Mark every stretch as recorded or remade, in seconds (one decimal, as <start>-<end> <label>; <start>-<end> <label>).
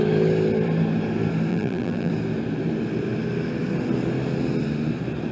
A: 0.0-1.5 recorded; 1.5-2.1 remade; 2.1-5.3 recorded